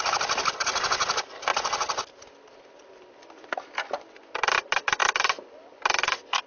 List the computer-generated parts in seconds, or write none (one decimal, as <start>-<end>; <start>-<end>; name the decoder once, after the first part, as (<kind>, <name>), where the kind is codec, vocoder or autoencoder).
none